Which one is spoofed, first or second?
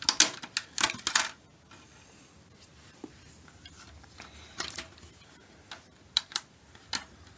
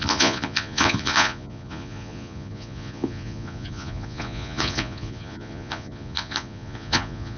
second